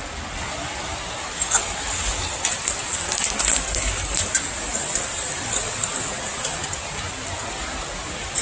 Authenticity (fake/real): real